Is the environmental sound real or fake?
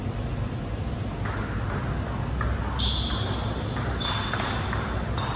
real